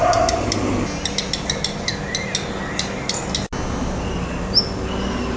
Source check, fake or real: real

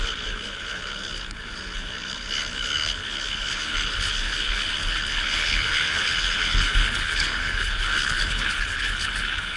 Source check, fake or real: fake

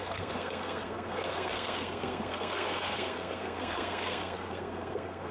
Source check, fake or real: fake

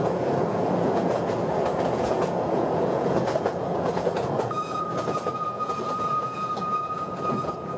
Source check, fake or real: fake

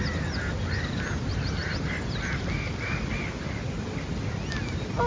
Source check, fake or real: real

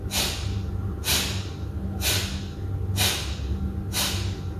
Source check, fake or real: real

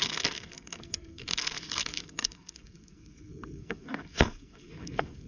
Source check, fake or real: fake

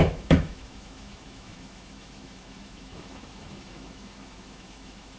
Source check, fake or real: fake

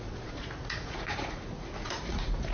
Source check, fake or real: fake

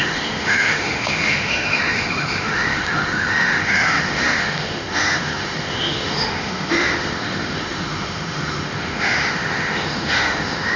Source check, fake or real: fake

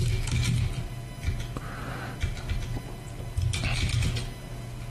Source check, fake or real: real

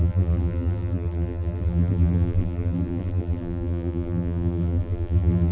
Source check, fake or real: fake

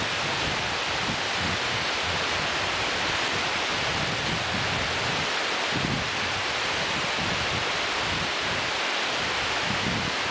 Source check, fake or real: real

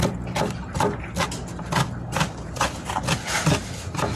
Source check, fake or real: real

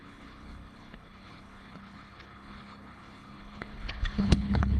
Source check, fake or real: fake